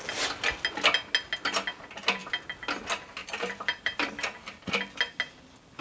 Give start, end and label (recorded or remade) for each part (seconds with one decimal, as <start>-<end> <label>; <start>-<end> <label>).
0.0-3.2 recorded; 3.2-4.1 remade; 4.1-5.8 recorded